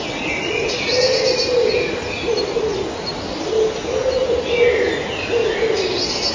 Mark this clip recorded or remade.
recorded